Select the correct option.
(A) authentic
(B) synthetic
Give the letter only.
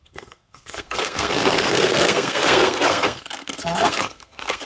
B